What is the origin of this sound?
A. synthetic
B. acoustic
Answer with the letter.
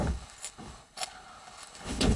A